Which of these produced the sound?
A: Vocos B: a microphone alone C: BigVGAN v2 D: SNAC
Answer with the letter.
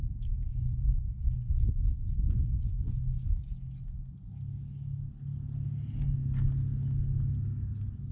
B